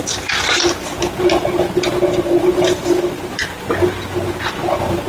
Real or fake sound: real